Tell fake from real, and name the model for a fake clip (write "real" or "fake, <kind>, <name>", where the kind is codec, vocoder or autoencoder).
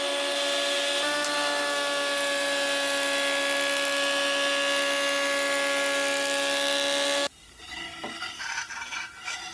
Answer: real